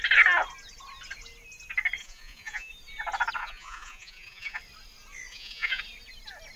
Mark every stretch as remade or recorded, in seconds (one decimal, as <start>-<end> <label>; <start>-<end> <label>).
0.0-2.0 recorded; 2.0-2.7 remade; 2.7-3.4 recorded; 3.4-4.6 remade; 4.6-5.3 recorded; 5.3-5.8 remade; 5.8-6.6 recorded